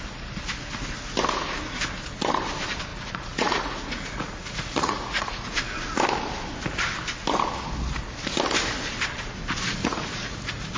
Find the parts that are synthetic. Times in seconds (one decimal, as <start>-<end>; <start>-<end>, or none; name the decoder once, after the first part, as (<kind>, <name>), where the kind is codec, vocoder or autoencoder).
2.9-5.6 (vocoder, Vocos); 9.8-10.8